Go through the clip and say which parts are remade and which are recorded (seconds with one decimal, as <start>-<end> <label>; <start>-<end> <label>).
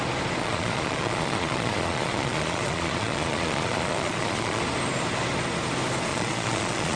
0.0-0.4 recorded; 0.4-4.6 remade; 4.6-6.1 recorded; 6.1-7.0 remade